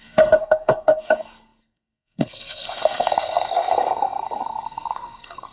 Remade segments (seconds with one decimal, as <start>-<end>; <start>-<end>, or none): 0.0-5.5